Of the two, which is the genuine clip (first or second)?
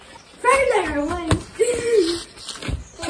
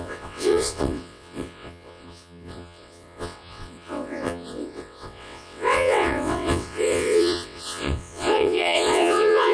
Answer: first